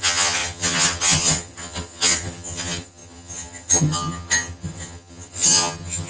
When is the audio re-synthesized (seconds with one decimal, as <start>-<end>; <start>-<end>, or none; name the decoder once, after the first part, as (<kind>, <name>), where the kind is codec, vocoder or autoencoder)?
0.0-6.1 (vocoder, HiFi-GAN)

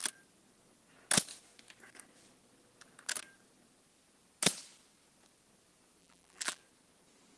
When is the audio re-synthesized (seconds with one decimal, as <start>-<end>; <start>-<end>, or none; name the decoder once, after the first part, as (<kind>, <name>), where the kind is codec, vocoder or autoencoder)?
6.0-6.6 (vocoder, BigVGAN v2)

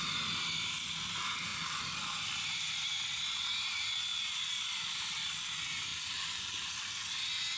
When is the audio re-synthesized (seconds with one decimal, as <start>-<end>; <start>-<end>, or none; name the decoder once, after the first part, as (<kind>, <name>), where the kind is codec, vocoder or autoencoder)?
4.1-4.6 (vocoder, BigVGAN v2); 5.9-6.7

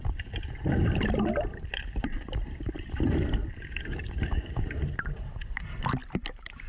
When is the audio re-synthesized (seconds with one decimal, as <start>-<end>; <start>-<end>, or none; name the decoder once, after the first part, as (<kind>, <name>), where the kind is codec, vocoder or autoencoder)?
0.0-6.7 (vocoder, BigVGAN v2)